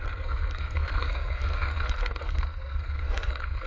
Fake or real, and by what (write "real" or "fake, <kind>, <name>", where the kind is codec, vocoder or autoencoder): fake, codec, SNAC